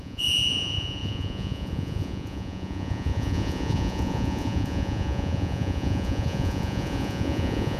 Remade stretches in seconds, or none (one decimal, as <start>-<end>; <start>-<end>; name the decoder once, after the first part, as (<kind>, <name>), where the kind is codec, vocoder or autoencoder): 0.0-7.8 (vocoder, Vocos)